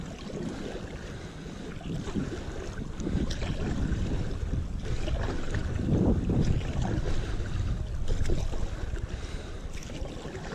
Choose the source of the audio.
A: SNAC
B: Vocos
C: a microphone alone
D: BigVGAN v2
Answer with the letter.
C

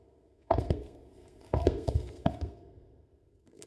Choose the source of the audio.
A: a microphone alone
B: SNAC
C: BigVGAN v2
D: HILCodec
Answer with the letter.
B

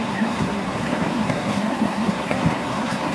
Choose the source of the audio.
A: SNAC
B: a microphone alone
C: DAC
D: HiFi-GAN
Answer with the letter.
A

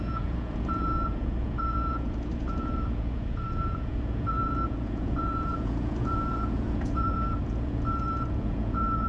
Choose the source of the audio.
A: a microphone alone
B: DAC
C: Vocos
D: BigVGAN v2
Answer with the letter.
C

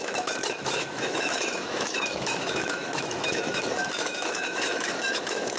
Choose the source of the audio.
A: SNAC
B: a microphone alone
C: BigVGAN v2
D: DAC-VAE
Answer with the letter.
D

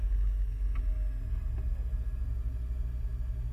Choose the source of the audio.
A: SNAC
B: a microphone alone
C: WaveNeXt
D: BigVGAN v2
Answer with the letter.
B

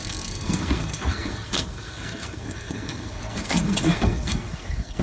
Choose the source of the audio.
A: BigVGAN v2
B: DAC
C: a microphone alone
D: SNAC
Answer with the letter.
D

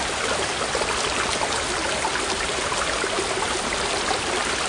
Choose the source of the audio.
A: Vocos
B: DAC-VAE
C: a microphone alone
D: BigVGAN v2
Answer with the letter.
C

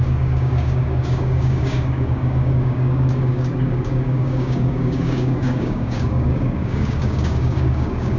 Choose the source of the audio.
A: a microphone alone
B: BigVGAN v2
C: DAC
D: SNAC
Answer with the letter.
C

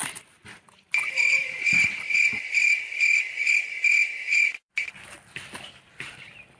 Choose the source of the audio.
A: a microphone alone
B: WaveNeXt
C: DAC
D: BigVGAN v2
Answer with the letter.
A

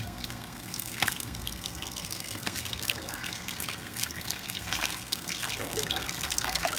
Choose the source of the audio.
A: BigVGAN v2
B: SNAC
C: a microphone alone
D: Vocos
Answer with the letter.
B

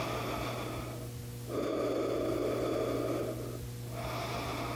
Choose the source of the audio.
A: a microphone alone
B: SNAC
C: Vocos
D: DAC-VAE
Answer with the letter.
A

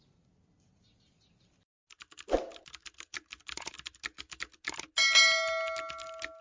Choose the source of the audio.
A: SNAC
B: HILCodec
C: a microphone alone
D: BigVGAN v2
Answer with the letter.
C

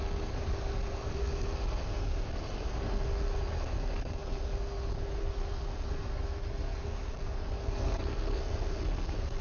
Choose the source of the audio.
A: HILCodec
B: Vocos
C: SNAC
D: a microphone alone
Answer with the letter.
C